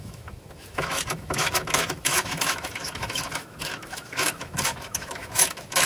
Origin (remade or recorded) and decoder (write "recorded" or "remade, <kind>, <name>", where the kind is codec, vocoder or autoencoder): remade, autoencoder, DAC-VAE